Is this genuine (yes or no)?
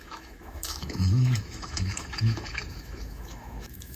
no